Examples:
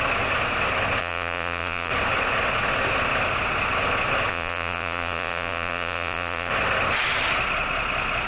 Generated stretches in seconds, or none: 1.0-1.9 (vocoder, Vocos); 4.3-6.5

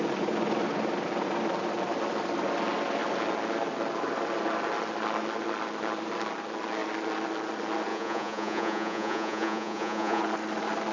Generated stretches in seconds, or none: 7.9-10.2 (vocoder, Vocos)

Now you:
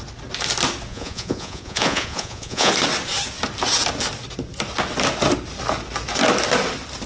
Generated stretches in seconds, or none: 0.9-2.7 (vocoder, Vocos)

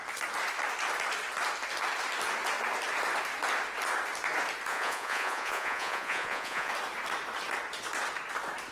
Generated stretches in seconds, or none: 4.7-6.7 (vocoder, Vocos)